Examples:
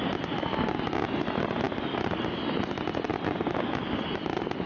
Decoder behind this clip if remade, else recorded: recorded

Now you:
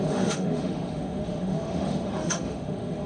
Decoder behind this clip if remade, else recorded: remade, autoencoder, DAC-VAE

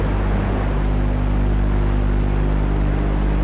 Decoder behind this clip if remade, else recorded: recorded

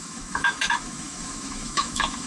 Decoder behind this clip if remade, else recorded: remade, autoencoder, DAC-VAE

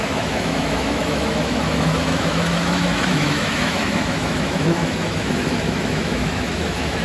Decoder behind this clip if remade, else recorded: remade, autoencoder, DAC-VAE